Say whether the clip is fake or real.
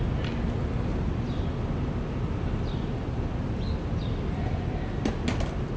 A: real